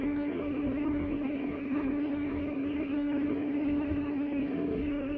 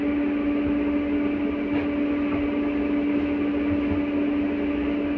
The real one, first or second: second